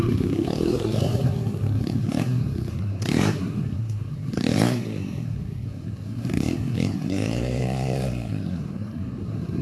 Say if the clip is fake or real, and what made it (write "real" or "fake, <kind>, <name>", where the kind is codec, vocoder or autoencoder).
fake, codec, SNAC